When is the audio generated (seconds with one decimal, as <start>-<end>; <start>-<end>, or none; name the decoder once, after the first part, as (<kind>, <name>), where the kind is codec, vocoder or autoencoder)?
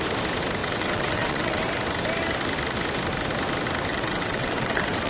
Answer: 0.6-1.6 (vocoder, WaveNeXt); 3.9-5.1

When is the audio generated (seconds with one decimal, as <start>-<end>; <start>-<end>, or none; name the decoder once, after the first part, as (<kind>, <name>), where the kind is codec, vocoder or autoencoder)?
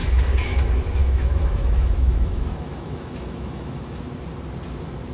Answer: 0.0-0.6 (autoencoder, DAC-VAE); 1.0-4.0